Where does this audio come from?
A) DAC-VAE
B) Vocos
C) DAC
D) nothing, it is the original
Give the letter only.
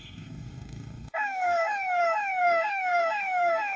C